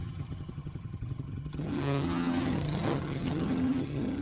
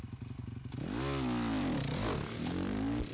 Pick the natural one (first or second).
second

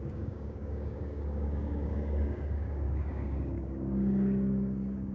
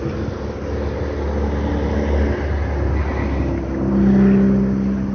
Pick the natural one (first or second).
second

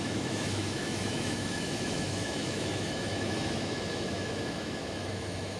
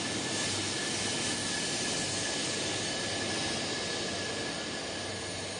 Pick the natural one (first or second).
second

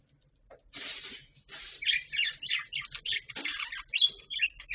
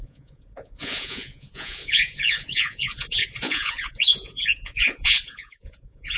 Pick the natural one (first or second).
first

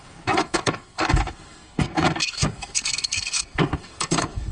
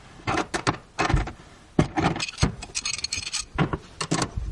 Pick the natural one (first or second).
second